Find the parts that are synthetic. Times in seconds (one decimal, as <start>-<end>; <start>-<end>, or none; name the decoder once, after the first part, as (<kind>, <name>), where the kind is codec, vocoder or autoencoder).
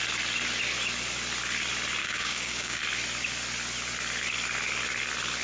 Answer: 2.0-2.8 (codec, DAC)